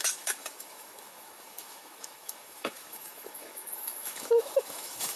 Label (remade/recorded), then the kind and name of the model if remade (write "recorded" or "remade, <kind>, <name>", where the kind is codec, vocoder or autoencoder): remade, autoencoder, DAC-VAE